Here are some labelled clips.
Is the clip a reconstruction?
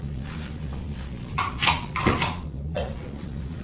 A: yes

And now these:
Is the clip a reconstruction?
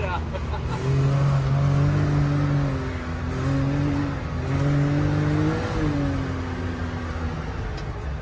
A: no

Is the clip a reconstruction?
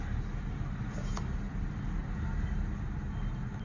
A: no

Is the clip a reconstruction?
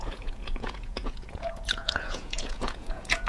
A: yes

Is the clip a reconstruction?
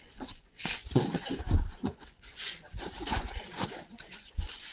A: yes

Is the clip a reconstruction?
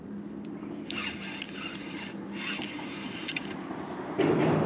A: no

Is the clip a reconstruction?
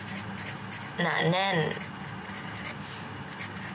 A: no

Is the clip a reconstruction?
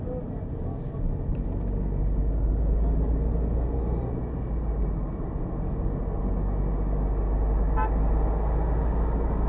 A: no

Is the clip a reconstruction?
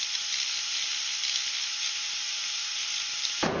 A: no